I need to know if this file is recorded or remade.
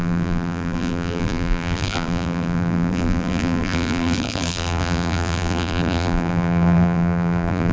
remade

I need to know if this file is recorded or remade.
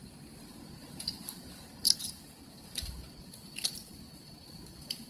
remade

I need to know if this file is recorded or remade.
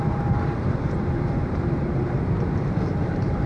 remade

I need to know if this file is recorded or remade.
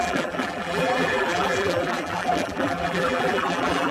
remade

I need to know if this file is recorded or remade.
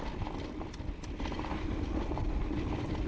recorded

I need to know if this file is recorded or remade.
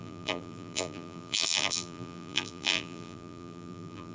remade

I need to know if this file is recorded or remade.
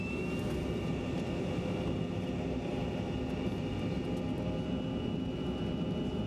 recorded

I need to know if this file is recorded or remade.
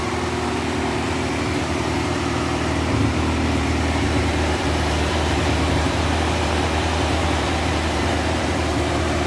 remade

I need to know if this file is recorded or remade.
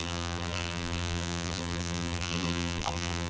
remade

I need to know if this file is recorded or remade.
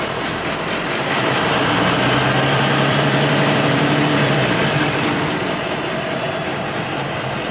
remade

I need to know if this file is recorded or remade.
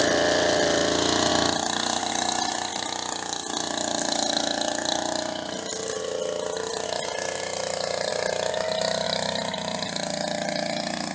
remade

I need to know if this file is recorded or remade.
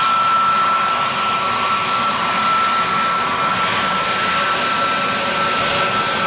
recorded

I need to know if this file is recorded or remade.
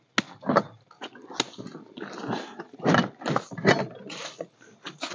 recorded